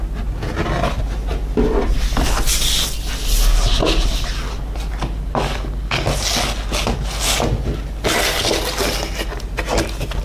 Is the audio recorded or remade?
recorded